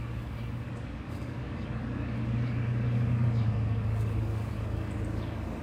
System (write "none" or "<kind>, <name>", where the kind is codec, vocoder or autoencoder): codec, DAC